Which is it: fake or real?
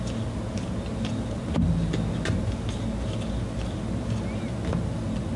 real